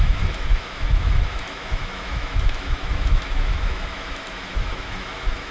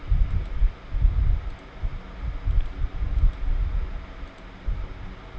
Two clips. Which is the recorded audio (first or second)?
second